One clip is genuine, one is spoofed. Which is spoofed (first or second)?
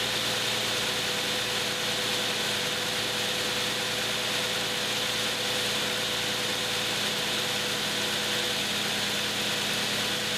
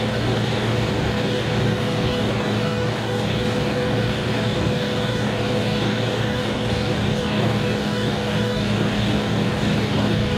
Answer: second